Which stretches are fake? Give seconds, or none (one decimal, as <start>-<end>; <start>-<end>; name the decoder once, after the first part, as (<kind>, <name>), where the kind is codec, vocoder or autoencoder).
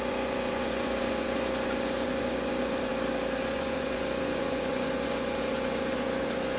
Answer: 0.0-2.9 (vocoder, Vocos); 3.4-6.6